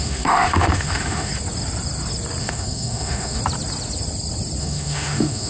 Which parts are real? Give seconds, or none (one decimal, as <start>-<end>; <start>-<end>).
1.3-2.4; 3.4-4.6

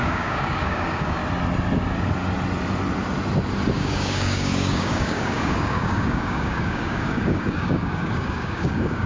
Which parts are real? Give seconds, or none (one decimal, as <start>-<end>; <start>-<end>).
1.2-3.7